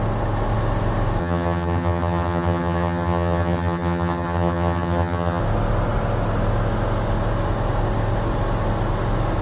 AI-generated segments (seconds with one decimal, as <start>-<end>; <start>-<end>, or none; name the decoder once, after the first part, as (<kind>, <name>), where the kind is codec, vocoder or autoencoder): 1.2-5.4 (vocoder, HiFi-GAN)